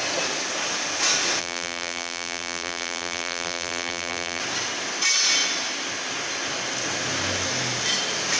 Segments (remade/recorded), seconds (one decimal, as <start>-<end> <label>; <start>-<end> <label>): 0.0-1.4 recorded; 1.4-4.4 remade; 4.4-8.4 recorded